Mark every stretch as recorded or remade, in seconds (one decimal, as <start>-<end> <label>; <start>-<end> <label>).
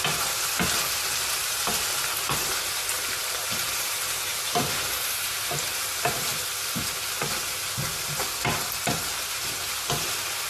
0.0-10.5 recorded